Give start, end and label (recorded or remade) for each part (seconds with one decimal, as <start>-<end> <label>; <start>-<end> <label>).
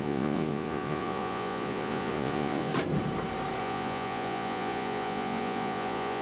0.0-2.7 remade; 2.7-3.6 recorded; 3.6-6.2 remade